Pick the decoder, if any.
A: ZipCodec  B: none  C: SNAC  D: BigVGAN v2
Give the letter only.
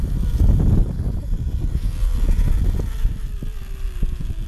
B